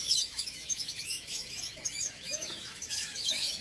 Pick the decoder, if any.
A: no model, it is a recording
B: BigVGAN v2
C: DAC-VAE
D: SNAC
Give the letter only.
C